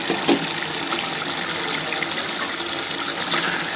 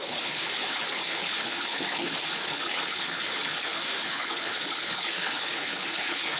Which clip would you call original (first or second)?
first